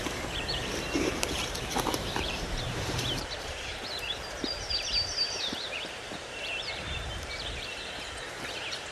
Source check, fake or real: fake